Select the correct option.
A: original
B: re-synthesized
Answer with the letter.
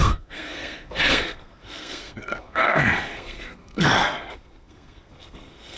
B